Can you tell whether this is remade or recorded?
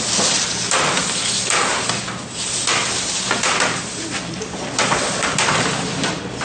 recorded